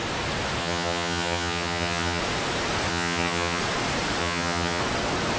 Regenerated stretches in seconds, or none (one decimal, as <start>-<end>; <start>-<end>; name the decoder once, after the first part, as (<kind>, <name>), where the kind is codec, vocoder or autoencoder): 0.6-2.2 (vocoder, HiFi-GAN); 2.9-3.6; 4.2-4.8